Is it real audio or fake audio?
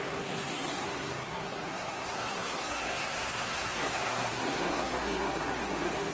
fake